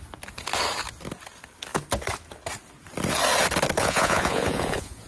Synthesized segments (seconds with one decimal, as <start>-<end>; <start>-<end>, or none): 3.8-5.1